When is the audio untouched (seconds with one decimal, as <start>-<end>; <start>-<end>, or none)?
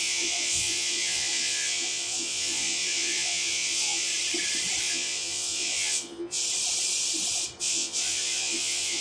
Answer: 4.1-4.8; 6.4-7.6